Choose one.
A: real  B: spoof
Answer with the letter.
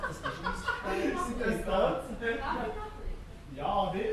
A